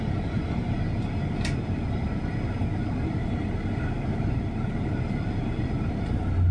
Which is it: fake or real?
real